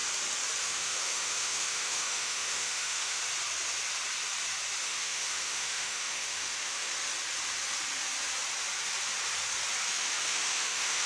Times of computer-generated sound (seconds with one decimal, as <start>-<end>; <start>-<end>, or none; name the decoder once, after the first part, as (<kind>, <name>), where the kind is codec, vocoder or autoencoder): 0.6-3.2 (autoencoder, DAC-VAE); 4.8-6.9; 9.9-11.1